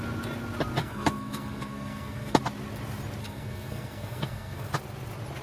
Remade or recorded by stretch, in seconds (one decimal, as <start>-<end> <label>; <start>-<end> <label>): 0.0-0.8 recorded; 0.8-2.4 remade; 2.4-3.2 recorded; 3.2-4.7 remade; 4.7-5.4 recorded